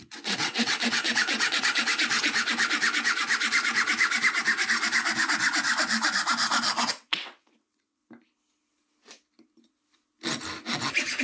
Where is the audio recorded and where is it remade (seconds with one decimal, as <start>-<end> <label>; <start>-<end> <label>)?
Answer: 0.0-1.8 remade; 1.8-6.8 recorded; 6.8-8.0 remade; 8.0-11.2 recorded

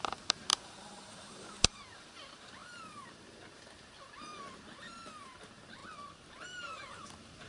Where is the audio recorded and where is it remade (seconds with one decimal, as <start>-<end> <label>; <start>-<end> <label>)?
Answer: 0.0-4.3 remade; 4.3-5.2 recorded; 5.2-5.8 remade; 5.8-6.3 recorded; 6.3-7.5 remade

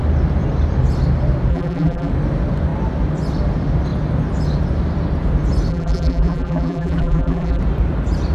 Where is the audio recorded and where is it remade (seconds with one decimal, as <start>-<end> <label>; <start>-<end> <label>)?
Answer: 0.0-1.5 recorded; 1.5-2.1 remade; 2.1-5.7 recorded; 5.7-7.6 remade; 7.6-8.3 recorded

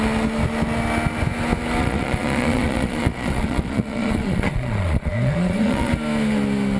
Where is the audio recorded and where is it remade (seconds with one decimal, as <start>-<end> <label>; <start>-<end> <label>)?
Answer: 0.0-1.8 recorded; 1.8-5.9 remade; 5.9-6.8 recorded

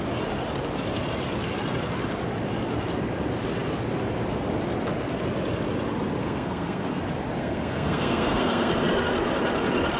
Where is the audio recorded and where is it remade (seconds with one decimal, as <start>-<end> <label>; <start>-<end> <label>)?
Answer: 0.0-6.2 recorded; 6.2-7.0 remade; 7.0-7.4 recorded; 7.4-8.7 remade; 8.7-10.0 recorded

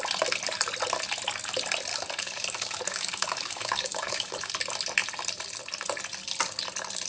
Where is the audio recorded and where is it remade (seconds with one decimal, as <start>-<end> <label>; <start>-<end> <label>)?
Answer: 0.0-1.9 recorded; 1.9-4.5 remade; 4.5-7.1 recorded

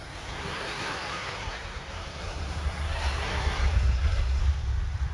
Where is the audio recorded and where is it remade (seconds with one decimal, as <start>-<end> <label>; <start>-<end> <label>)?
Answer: 0.0-4.4 remade; 4.4-5.1 recorded